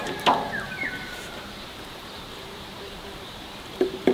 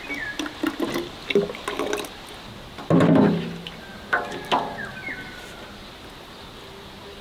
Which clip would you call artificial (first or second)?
first